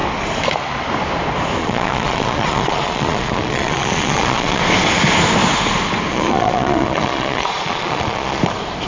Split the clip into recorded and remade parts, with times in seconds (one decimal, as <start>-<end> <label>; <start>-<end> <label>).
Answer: 0.0-1.6 recorded; 1.6-4.6 remade; 4.6-6.1 recorded; 6.1-8.4 remade; 8.4-8.9 recorded